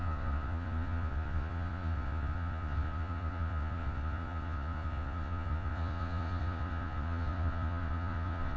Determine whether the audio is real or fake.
fake